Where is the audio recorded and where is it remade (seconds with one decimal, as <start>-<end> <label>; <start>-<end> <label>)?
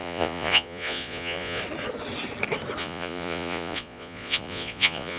0.0-1.6 remade; 1.6-2.8 recorded; 2.8-5.2 remade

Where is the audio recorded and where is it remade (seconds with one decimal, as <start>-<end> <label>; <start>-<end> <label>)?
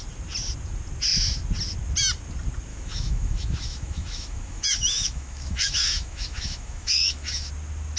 0.0-2.7 recorded; 2.7-7.5 remade; 7.5-8.0 recorded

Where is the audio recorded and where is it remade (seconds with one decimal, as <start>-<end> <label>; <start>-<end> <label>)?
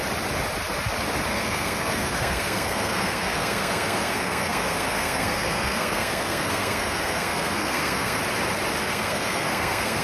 0.0-1.3 recorded; 1.3-8.2 remade; 8.2-8.8 recorded; 8.8-10.0 remade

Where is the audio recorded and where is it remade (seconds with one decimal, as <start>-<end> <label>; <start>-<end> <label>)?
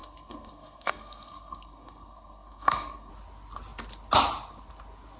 0.0-3.1 remade; 3.1-5.2 recorded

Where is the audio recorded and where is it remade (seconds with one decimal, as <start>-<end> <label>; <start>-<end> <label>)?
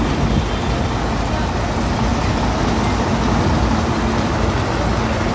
0.0-5.3 recorded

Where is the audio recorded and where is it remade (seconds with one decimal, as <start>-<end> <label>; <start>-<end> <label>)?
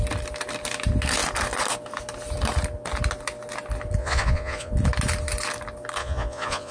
0.0-4.0 recorded; 4.0-4.7 remade; 4.7-6.0 recorded; 6.0-6.7 remade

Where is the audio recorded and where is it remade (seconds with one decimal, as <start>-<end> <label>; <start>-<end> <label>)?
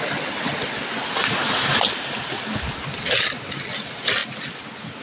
0.0-1.2 recorded; 1.2-1.8 remade; 1.8-5.0 recorded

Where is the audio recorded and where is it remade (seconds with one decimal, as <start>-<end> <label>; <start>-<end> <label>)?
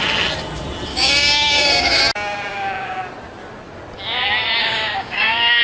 0.0-0.9 recorded; 0.9-2.0 remade; 2.0-2.5 recorded; 2.5-3.0 remade; 3.0-4.6 recorded; 4.6-5.6 remade